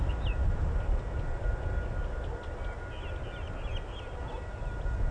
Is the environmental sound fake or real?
real